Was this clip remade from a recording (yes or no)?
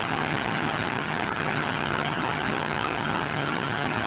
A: yes